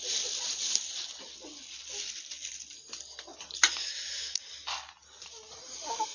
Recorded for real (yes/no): yes